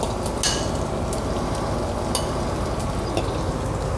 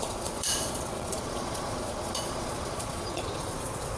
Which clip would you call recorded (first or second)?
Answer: first